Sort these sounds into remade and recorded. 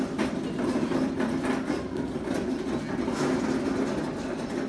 recorded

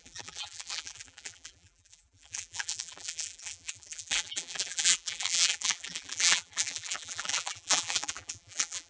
remade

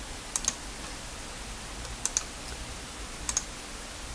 recorded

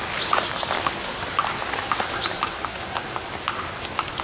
recorded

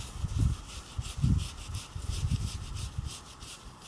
recorded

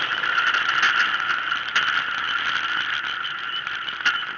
remade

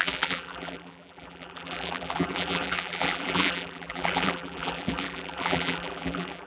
remade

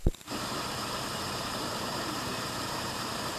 remade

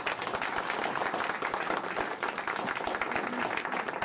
recorded